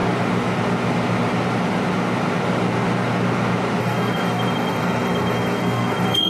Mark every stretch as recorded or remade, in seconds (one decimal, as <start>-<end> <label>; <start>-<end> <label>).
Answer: 0.0-3.8 recorded; 3.8-6.3 remade